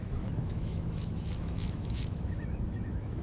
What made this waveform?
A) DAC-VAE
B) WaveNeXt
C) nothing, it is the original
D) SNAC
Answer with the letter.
A